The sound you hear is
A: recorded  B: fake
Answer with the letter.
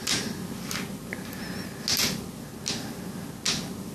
A